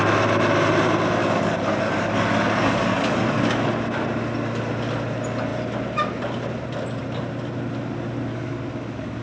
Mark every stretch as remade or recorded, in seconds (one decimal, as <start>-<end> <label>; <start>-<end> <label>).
0.0-1.2 recorded; 1.2-3.7 remade; 3.7-8.3 recorded; 8.3-9.2 remade